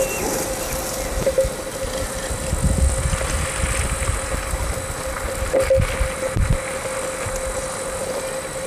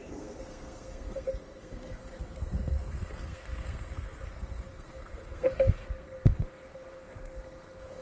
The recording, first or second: first